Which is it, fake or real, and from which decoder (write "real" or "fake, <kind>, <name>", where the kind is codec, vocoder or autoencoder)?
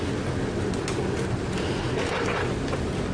real